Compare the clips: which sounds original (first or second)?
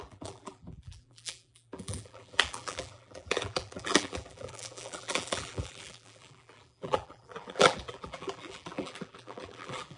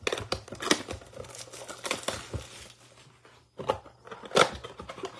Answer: second